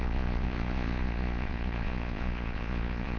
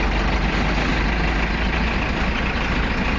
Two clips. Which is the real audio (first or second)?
second